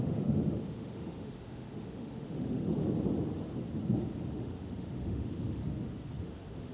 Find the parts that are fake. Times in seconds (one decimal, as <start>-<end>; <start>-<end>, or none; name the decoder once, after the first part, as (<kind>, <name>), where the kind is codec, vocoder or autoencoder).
0.0-2.8 (autoencoder, DAC-VAE); 4.3-5.6; 6.2-6.7